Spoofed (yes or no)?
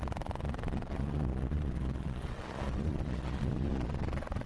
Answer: yes